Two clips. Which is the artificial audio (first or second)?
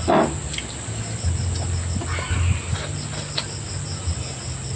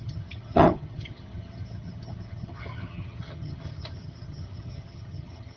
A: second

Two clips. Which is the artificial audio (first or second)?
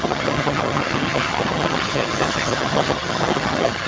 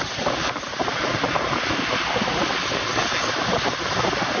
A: first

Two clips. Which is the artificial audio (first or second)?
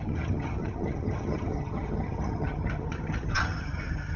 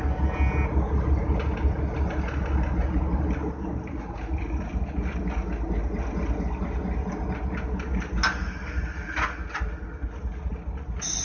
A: first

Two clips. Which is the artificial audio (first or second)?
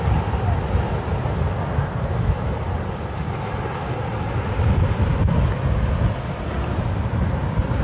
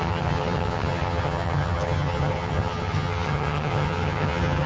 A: second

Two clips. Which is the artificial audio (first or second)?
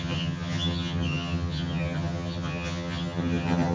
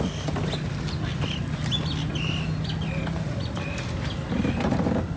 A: first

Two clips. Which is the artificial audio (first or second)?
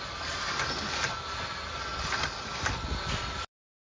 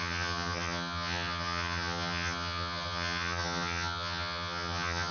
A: second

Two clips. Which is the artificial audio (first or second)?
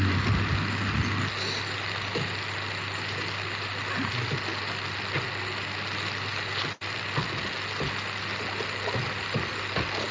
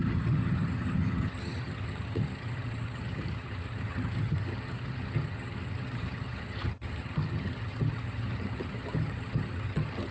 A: second